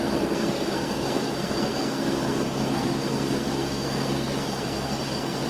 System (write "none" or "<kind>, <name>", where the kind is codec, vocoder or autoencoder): codec, SNAC